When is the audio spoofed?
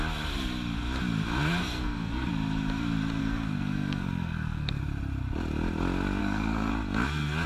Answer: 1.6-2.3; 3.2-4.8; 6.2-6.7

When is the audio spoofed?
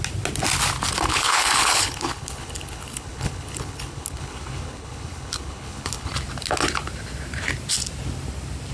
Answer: 1.1-6.1